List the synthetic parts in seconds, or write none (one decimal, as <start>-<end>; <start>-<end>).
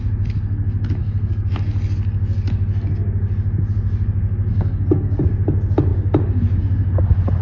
1.0-1.5; 4.5-5.2